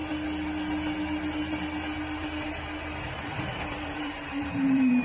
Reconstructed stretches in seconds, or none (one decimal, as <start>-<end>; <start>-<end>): 3.0-5.0